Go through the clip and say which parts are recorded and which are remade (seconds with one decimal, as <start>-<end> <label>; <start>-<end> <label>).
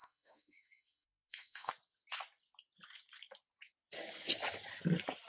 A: 0.0-1.7 remade; 1.7-5.3 recorded